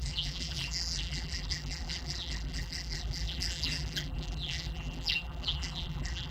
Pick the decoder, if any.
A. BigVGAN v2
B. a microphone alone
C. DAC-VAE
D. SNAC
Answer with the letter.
A